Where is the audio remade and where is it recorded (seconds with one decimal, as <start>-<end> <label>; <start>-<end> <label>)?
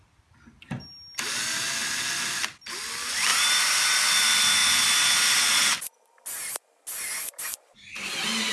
0.0-3.3 recorded; 3.3-4.0 remade; 4.0-6.9 recorded; 6.9-7.6 remade; 7.6-8.5 recorded